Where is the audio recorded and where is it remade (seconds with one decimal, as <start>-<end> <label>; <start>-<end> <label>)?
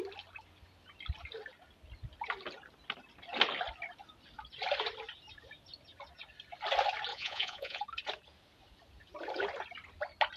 0.0-7.1 recorded; 7.1-7.8 remade; 7.8-10.4 recorded